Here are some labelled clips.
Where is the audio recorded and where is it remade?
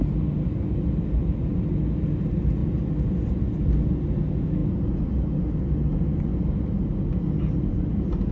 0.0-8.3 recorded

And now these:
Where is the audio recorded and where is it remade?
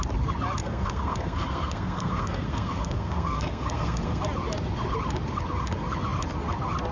0.0-0.6 recorded; 0.6-4.2 remade; 4.2-6.9 recorded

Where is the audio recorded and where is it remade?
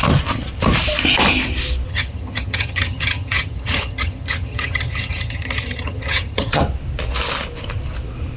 0.0-1.9 recorded; 1.9-6.6 remade; 6.6-8.4 recorded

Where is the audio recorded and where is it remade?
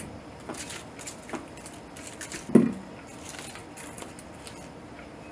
0.0-5.3 recorded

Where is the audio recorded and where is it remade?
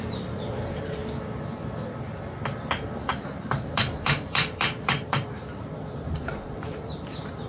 0.0-1.0 remade; 1.0-2.7 recorded; 2.7-7.5 remade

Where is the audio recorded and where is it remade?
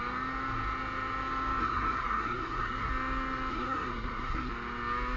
0.0-1.6 recorded; 1.6-2.9 remade; 2.9-3.5 recorded; 3.5-4.5 remade; 4.5-5.2 recorded